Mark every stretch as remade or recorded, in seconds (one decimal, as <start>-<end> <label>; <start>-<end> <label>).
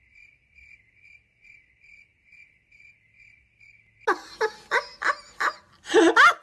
0.0-6.4 recorded